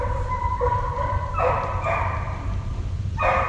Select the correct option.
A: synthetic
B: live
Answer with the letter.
A